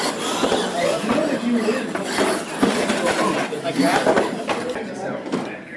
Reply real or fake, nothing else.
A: real